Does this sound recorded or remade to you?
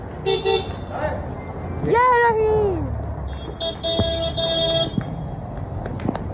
recorded